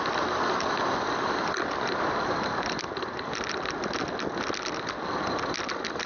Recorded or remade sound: recorded